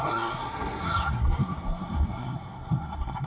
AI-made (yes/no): yes